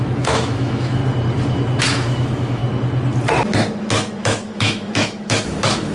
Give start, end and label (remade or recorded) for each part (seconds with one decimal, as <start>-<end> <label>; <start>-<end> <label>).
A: 0.0-1.0 remade; 1.0-1.8 recorded; 1.8-2.6 remade; 2.6-4.2 recorded; 4.2-5.9 remade